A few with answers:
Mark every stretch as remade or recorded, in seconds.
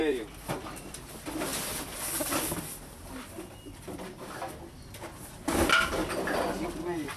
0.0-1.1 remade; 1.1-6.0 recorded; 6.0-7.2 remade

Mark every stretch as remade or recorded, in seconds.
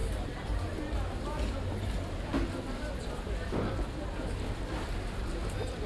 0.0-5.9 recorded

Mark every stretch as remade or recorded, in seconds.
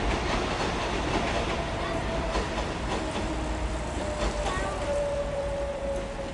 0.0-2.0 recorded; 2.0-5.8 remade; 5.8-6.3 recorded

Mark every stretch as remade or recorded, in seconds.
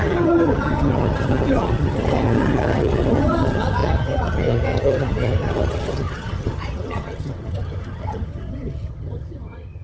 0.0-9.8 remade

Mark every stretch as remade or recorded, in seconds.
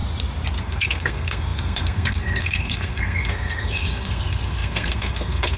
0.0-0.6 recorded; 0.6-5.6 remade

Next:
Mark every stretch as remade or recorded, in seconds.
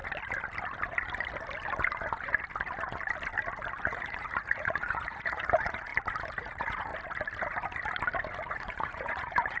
0.0-3.8 recorded; 3.8-5.9 remade; 5.9-6.4 recorded; 6.4-6.9 remade; 6.9-8.5 recorded; 8.5-9.6 remade